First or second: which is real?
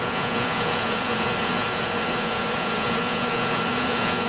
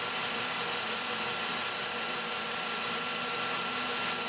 second